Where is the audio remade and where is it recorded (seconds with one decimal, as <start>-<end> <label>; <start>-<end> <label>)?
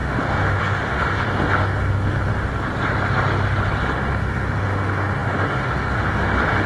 0.0-2.3 remade; 2.3-4.1 recorded; 4.1-6.7 remade